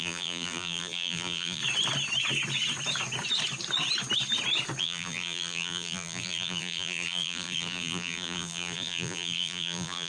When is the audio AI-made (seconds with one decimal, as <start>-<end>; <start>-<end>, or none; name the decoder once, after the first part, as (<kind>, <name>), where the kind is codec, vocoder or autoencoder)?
0.0-1.6 (vocoder, BigVGAN v2); 4.8-10.1